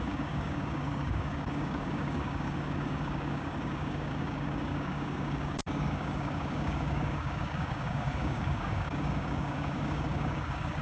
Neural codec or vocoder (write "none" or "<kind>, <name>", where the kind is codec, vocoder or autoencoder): codec, DAC